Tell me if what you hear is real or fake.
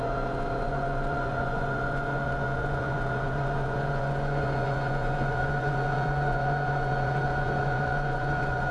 fake